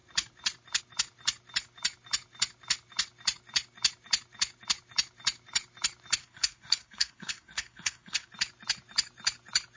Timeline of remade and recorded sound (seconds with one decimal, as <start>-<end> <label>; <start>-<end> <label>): 0.0-6.2 recorded; 6.2-8.3 remade; 8.3-9.8 recorded